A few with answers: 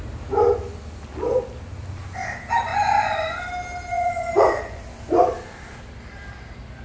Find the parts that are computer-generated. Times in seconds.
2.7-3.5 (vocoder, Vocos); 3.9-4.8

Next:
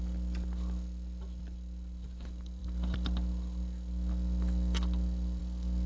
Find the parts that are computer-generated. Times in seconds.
none

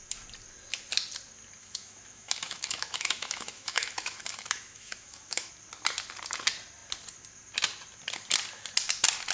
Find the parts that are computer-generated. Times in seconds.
1.6-5.5 (autoencoder, DAC-VAE)

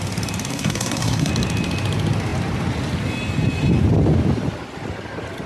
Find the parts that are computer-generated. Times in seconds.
0.5-1.3 (codec, SNAC)

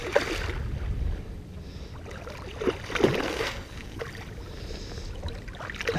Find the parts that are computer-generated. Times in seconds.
3.2-4.0 (codec, SNAC)

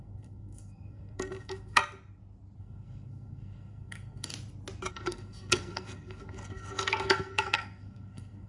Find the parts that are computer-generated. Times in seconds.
0.0-1.8 (codec, SNAC); 2.6-4.3; 4.9-8.5

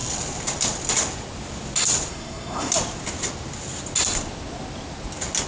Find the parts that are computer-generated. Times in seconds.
2.1-2.7 (codec, SNAC)